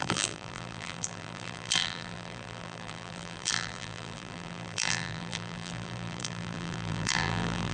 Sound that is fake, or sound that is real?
fake